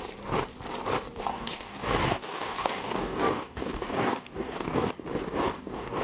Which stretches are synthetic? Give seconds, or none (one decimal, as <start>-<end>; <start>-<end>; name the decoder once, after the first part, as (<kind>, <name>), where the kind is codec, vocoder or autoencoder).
1.3-4.9 (codec, DAC); 5.5-6.0

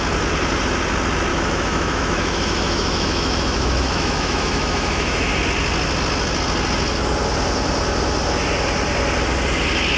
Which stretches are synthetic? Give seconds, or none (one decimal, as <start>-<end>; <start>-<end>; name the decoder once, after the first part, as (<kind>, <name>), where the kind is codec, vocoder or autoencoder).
1.3-5.3 (autoencoder, DAC-VAE)

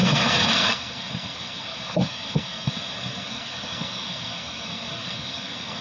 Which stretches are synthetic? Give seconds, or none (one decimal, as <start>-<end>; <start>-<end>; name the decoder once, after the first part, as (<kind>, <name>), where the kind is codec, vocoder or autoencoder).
0.0-5.8 (codec, SNAC)

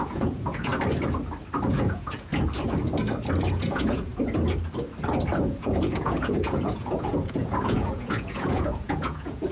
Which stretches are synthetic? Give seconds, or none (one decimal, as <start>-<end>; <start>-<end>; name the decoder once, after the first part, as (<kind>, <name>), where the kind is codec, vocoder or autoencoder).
0.0-0.7 (vocoder, Vocos); 1.7-2.3; 3.5-4.1; 5.4-9.5

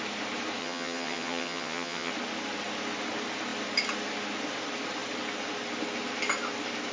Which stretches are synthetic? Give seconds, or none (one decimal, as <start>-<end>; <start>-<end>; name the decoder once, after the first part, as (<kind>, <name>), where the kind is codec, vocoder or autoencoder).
0.6-2.1 (vocoder, HiFi-GAN)